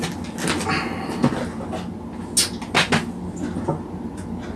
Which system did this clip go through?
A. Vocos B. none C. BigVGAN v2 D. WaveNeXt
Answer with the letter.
B